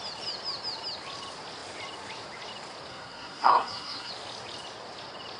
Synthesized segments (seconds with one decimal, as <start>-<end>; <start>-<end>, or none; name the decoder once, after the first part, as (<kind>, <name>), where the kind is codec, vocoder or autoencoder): 2.9-4.1 (codec, SNAC)